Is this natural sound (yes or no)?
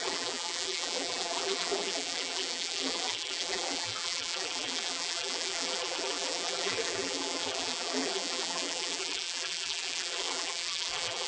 no